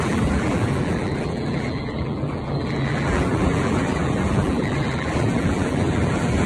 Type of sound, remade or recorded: remade